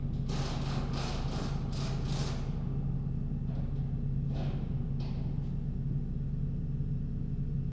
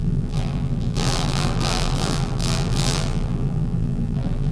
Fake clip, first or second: second